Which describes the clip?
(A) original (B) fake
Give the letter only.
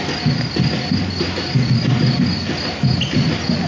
A